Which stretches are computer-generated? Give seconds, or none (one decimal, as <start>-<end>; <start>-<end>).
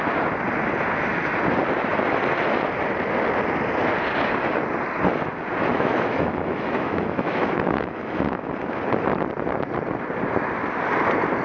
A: 5.7-8.5